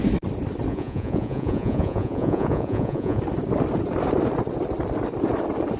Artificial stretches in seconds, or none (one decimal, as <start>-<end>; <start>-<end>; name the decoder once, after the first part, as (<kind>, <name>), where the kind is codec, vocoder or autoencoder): 0.7-3.2 (vocoder, Vocos)